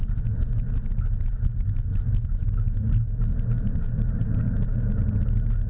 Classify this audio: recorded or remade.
recorded